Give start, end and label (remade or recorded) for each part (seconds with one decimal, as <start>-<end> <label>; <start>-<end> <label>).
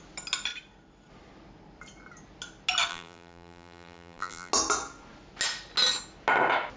0.0-2.9 recorded; 2.9-4.5 remade; 4.5-6.8 recorded